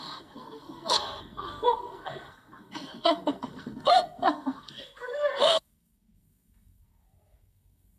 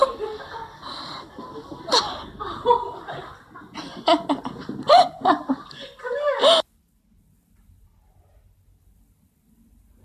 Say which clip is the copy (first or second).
first